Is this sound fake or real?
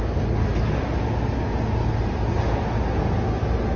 real